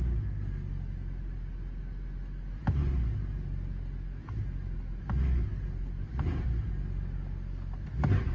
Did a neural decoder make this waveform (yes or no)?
no